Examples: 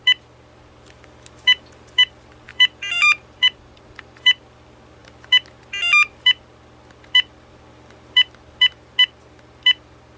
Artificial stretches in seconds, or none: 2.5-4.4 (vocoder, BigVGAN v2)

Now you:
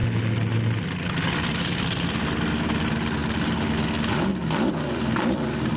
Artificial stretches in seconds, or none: 4.4-5.8 (vocoder, BigVGAN v2)

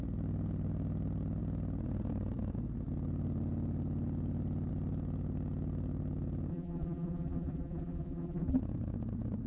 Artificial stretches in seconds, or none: 6.5-8.6 (vocoder, BigVGAN v2)

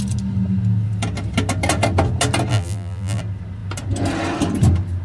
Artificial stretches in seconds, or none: 2.5-3.2 (vocoder, BigVGAN v2)

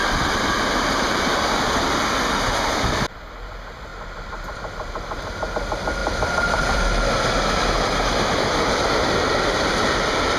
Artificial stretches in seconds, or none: 0.0-1.2 (vocoder, BigVGAN v2); 3.9-5.5; 6.0-6.8

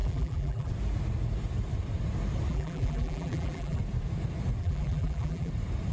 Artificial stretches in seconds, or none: 0.0-0.7 (vocoder, BigVGAN v2); 2.5-3.8; 4.6-5.5

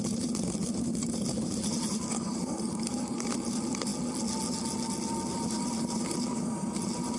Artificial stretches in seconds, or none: 0.0-3.9 (vocoder, BigVGAN v2); 5.3-7.2